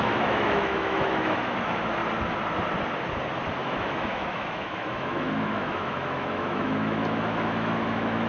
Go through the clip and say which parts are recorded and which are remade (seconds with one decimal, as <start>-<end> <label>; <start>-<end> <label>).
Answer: 0.0-2.0 remade; 2.0-3.6 recorded; 3.6-8.3 remade